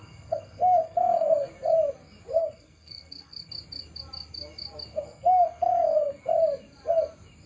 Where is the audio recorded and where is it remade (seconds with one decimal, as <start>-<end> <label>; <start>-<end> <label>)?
0.0-1.5 remade; 1.5-2.4 recorded; 2.4-3.5 remade; 3.5-4.9 recorded; 4.9-6.2 remade; 6.2-7.5 recorded

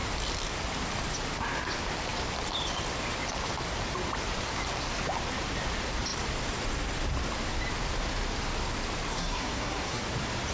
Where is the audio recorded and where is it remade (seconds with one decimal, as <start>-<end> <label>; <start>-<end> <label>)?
0.0-9.1 recorded; 9.1-10.0 remade; 10.0-10.5 recorded